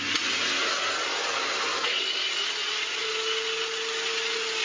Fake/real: real